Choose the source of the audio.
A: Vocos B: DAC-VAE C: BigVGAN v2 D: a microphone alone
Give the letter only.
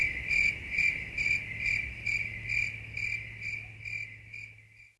D